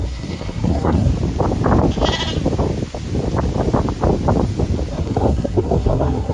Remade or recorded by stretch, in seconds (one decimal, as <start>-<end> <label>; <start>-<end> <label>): 0.0-1.1 remade; 1.1-4.9 recorded; 4.9-6.3 remade